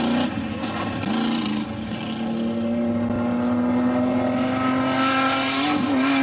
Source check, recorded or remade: recorded